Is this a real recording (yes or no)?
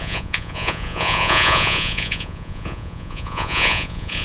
no